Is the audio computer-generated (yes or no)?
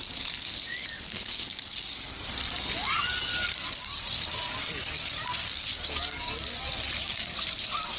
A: yes